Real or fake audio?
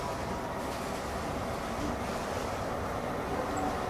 real